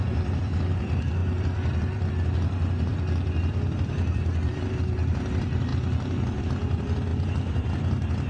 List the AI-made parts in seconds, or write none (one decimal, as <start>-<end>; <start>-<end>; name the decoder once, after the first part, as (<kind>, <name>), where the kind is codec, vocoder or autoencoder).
0.0-5.7 (vocoder, BigVGAN v2); 6.4-8.3